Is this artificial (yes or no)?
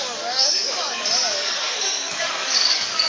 yes